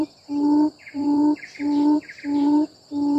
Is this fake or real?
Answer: fake